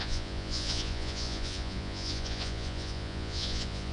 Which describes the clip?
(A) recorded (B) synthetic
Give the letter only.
B